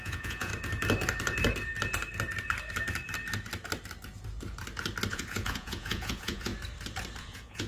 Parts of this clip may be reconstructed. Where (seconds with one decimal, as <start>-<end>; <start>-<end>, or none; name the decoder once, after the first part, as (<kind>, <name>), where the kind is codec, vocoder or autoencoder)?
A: 0.0-0.5 (vocoder, Vocos); 5.1-6.5; 7.2-7.7